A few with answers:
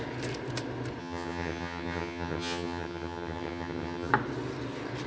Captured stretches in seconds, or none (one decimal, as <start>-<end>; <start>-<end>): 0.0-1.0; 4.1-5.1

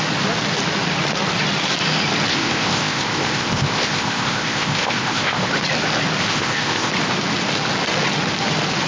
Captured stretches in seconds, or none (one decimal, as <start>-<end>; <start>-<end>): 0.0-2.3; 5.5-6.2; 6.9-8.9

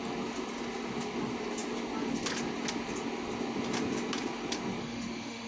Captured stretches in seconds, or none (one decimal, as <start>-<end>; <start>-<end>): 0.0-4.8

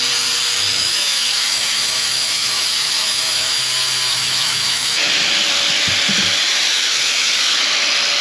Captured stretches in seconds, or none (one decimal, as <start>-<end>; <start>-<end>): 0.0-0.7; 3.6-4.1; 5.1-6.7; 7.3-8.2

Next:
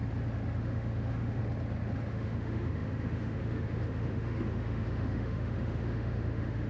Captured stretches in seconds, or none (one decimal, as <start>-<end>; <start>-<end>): 0.0-0.6; 1.4-2.1